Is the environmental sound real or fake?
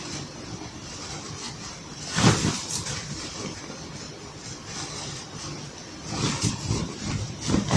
real